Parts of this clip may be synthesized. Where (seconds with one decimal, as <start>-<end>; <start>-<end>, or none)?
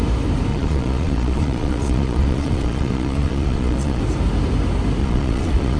0.5-4.0; 5.0-5.8